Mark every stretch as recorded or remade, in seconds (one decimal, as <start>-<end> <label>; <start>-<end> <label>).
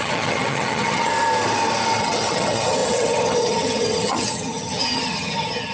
0.0-1.1 remade; 1.1-2.0 recorded; 2.0-5.7 remade